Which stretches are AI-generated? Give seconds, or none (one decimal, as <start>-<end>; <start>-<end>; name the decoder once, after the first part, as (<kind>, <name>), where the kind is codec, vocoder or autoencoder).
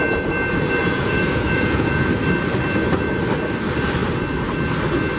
0.8-2.1 (vocoder, Vocos)